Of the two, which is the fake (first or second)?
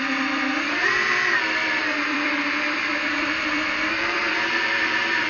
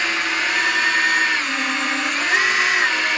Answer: first